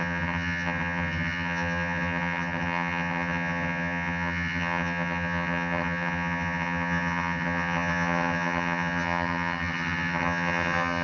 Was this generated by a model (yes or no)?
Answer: yes